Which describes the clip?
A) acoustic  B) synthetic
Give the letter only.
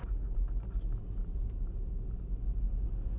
A